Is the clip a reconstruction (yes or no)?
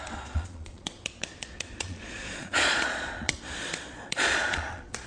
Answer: yes